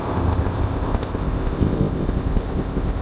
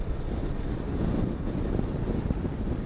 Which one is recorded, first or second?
second